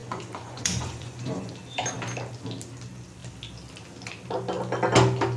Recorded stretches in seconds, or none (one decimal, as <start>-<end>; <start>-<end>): 1.5-5.4